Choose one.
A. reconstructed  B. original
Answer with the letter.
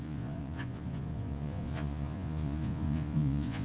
A